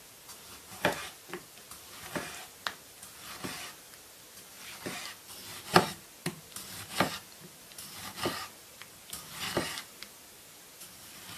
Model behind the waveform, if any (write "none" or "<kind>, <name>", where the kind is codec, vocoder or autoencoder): none